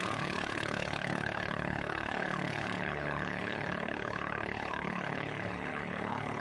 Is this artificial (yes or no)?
yes